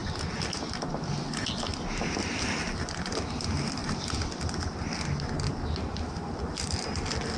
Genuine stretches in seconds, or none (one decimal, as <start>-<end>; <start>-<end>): 0.0-7.4